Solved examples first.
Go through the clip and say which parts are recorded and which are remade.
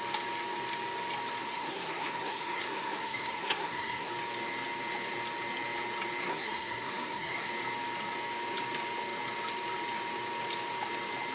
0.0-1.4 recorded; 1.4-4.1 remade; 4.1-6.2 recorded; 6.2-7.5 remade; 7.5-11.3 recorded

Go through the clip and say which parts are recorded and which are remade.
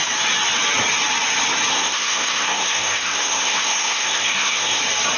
0.0-1.7 recorded; 1.7-4.8 remade; 4.8-5.2 recorded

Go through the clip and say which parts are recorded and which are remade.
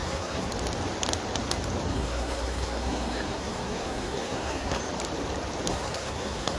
0.0-0.5 remade; 0.5-1.9 recorded; 1.9-4.8 remade; 4.8-5.7 recorded; 5.7-6.6 remade